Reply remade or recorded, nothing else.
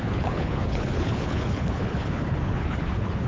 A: remade